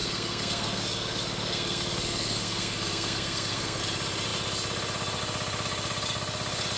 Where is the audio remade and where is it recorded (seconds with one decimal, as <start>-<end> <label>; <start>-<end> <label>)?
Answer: 0.0-3.8 remade; 3.8-6.8 recorded